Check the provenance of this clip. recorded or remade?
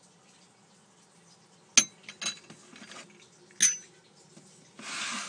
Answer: recorded